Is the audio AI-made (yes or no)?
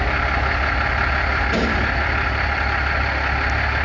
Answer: no